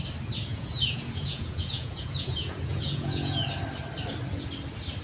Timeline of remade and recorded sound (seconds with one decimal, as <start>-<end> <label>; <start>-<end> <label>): 0.0-0.5 recorded; 0.5-3.5 remade; 3.5-5.0 recorded